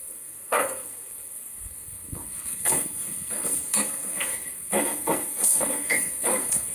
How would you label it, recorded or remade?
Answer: remade